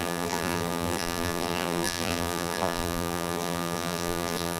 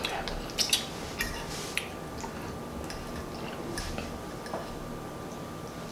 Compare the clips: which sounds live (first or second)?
second